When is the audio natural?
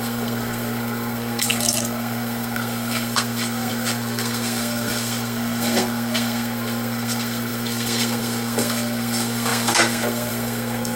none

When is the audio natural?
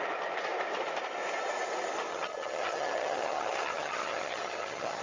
0.0-2.1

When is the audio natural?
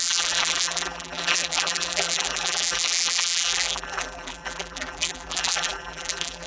none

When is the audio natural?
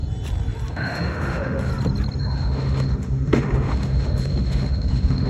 0.0-0.7; 1.7-2.2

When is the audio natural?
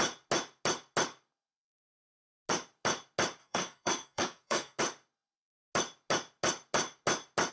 0.0-3.4; 4.8-7.5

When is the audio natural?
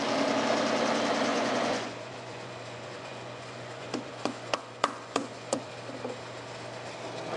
0.0-1.3; 5.7-7.4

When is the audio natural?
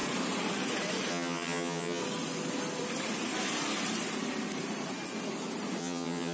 0.0-1.1; 2.0-5.8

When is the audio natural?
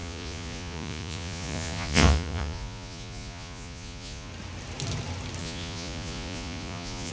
4.3-5.4